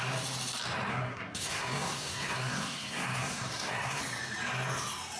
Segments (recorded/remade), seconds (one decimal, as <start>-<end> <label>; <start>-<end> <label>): 0.0-0.9 recorded; 0.9-4.0 remade; 4.0-5.2 recorded